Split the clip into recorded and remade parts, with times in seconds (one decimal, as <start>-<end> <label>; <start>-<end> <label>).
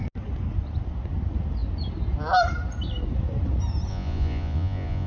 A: 0.0-3.9 recorded; 3.9-5.1 remade